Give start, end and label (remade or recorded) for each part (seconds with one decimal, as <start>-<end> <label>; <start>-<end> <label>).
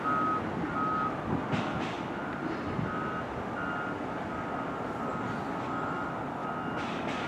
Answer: 0.0-7.3 recorded